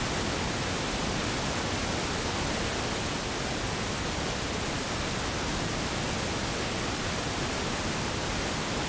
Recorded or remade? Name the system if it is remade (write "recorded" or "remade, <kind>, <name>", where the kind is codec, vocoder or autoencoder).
recorded